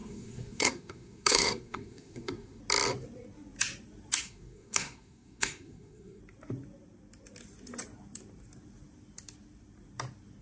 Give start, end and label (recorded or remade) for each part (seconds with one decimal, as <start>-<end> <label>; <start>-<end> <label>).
0.0-2.6 remade; 2.6-4.2 recorded; 4.2-6.2 remade; 6.2-10.4 recorded